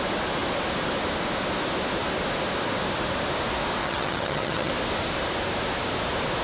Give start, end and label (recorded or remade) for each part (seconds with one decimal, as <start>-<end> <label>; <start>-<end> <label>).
0.0-3.8 recorded; 3.8-4.7 remade; 4.7-6.4 recorded